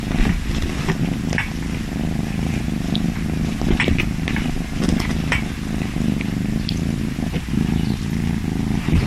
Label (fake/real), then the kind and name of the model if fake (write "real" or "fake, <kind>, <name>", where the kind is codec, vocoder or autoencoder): real